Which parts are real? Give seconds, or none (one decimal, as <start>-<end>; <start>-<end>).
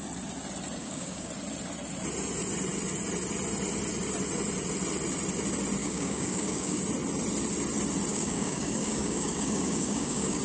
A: 0.0-0.8; 1.3-5.8; 6.8-8.1